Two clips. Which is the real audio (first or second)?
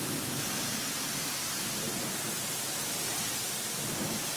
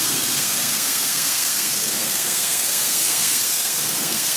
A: first